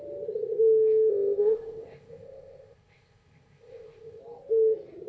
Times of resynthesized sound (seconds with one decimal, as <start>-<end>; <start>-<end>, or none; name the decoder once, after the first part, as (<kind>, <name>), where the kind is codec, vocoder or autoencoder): 1.1-4.2 (codec, ZipCodec)